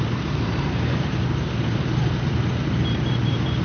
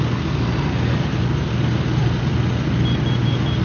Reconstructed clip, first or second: first